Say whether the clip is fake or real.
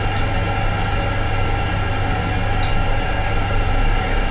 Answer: real